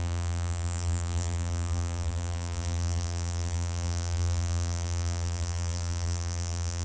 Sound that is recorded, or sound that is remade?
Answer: remade